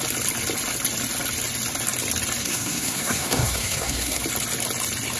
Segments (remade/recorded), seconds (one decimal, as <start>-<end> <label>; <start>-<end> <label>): 0.0-2.4 recorded; 2.4-4.2 remade; 4.2-5.2 recorded